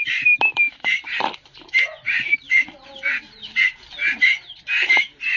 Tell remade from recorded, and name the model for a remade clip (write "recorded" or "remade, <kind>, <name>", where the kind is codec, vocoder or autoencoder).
remade, vocoder, BigVGAN v2